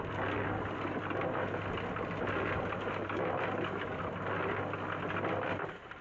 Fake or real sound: real